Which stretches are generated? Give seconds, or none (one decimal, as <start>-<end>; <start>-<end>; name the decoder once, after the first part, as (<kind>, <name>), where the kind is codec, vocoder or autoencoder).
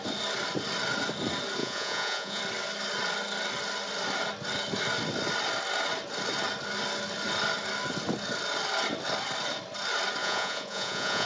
1.6-2.4 (vocoder, Vocos); 10.2-11.3